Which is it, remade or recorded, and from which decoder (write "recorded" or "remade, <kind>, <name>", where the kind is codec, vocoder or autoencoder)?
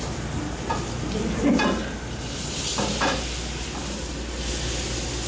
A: recorded